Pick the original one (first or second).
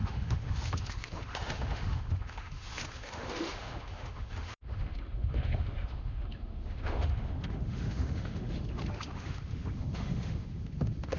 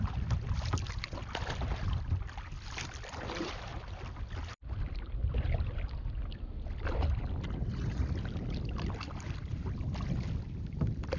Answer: second